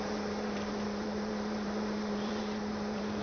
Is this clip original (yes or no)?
no